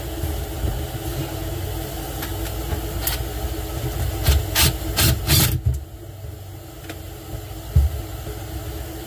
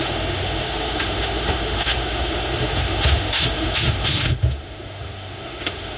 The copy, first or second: second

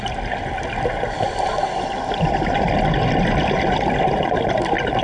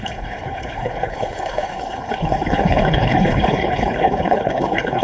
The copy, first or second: second